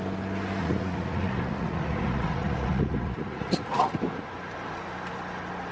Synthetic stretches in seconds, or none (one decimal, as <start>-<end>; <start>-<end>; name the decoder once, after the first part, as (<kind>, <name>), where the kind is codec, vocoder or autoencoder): 0.6-4.0 (vocoder, Vocos)